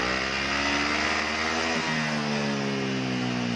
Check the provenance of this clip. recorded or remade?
recorded